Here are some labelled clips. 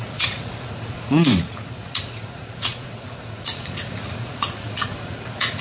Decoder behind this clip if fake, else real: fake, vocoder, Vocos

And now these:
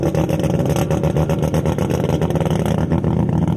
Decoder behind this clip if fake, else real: real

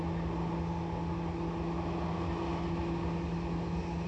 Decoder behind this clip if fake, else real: real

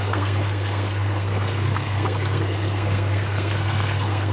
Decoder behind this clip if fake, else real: fake, codec, SNAC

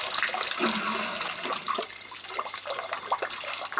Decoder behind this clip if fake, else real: real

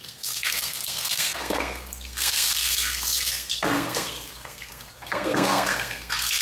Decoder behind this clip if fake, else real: fake, codec, SNAC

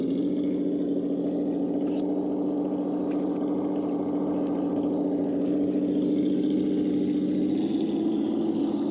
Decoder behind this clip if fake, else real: real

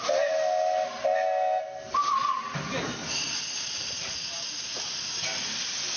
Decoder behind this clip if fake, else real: real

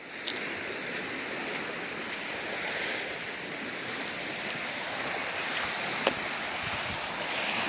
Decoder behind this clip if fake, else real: real